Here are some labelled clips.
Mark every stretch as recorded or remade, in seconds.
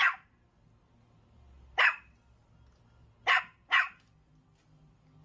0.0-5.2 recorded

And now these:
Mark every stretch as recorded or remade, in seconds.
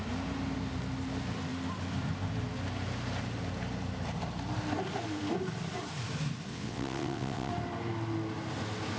0.0-6.5 recorded; 6.5-7.5 remade; 7.5-9.0 recorded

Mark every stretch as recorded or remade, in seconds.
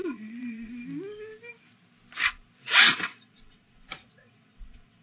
0.0-0.7 remade; 0.7-2.6 recorded; 2.6-5.0 remade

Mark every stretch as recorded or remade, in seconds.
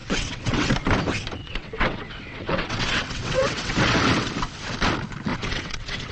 0.0-0.7 remade; 0.7-1.4 recorded; 1.4-4.3 remade; 4.3-5.3 recorded; 5.3-6.1 remade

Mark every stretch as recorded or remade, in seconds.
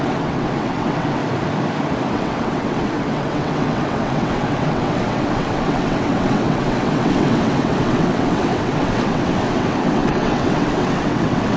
0.0-1.2 remade; 1.2-2.1 recorded; 2.1-11.6 remade